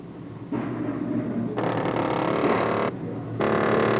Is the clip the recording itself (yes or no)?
yes